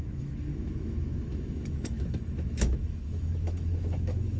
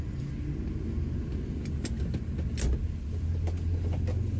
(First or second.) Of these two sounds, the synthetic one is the first